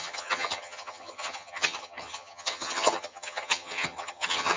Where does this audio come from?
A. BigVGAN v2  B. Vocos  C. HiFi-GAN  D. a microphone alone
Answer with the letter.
C